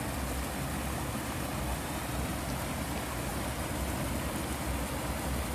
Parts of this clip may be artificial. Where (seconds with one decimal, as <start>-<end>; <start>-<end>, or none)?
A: none